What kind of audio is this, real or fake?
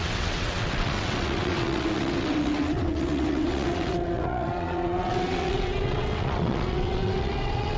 fake